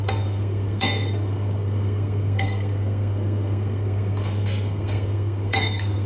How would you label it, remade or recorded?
remade